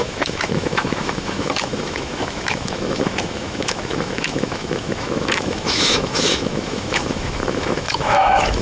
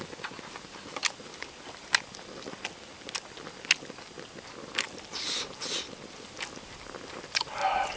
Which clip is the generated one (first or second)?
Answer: first